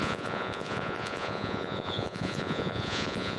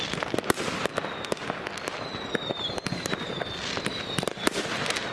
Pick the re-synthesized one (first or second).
first